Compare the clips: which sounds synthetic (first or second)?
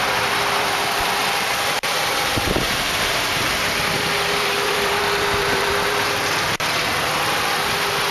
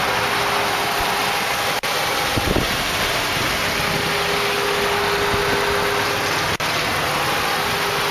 first